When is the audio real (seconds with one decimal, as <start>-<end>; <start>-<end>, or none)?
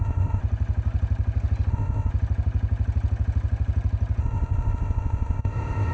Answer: 0.4-1.7; 2.1-4.2